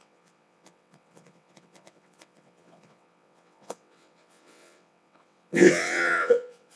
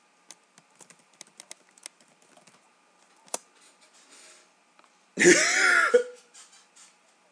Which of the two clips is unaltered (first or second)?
second